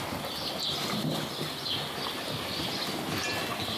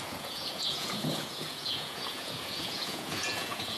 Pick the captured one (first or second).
first